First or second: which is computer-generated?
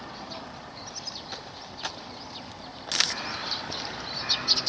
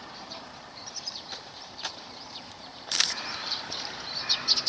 second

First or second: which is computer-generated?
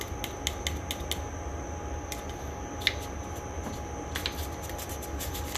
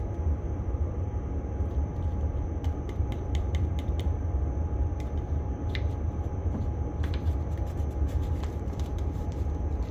second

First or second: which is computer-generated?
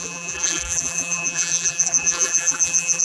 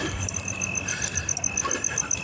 first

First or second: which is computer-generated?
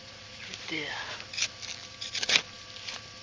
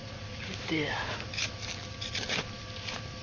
second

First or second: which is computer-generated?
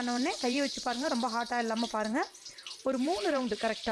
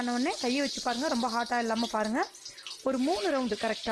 first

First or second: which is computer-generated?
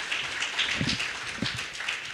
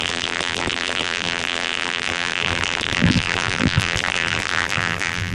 second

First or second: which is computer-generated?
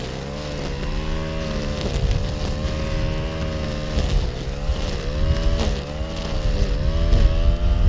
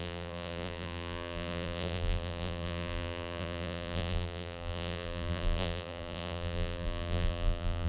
second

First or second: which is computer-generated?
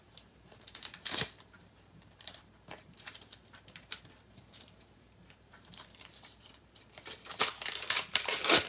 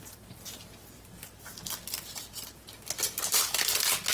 first